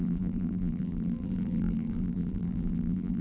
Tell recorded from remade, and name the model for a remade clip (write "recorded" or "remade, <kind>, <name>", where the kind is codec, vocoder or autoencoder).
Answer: remade, vocoder, BigVGAN v2